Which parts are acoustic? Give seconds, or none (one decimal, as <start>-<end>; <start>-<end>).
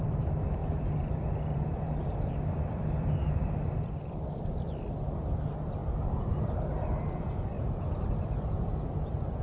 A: none